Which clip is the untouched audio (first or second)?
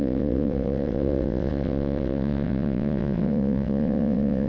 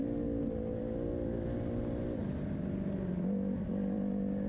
second